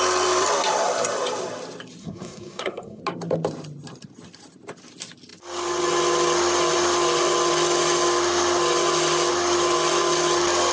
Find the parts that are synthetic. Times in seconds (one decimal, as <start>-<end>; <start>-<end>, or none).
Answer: 2.0-3.0